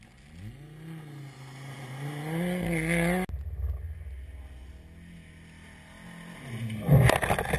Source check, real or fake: real